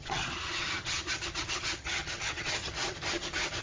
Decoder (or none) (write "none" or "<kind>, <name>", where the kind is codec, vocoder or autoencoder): vocoder, HiFi-GAN